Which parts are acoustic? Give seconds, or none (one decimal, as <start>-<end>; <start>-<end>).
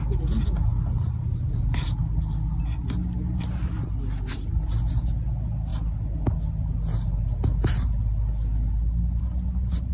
0.0-9.9